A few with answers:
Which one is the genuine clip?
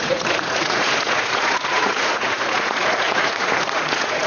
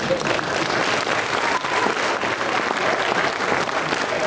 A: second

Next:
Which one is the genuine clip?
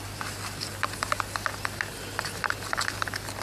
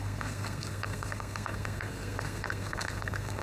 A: first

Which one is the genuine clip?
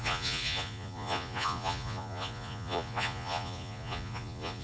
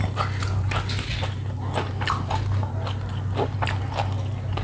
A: second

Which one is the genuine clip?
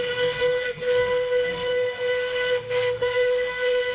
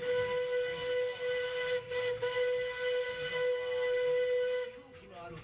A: second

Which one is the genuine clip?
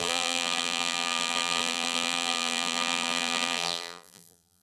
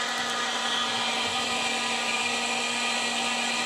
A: second